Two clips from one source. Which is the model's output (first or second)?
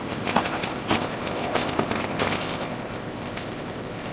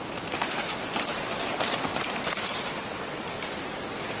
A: first